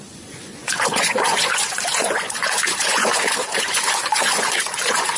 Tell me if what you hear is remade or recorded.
remade